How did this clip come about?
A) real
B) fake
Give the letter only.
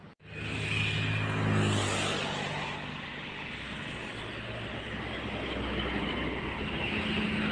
A